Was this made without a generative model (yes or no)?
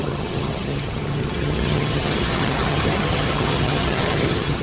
no